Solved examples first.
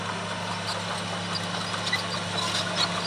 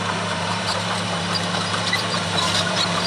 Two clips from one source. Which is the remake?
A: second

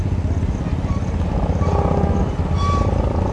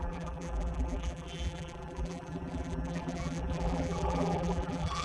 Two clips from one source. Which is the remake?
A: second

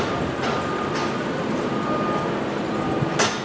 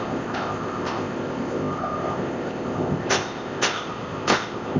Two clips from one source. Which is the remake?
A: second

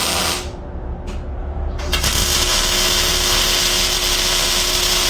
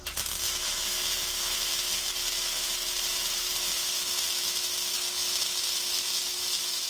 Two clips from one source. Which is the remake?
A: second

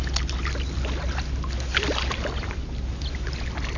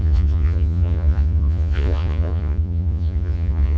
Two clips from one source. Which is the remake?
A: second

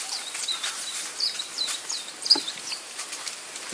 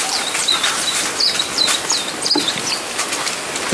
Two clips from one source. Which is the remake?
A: first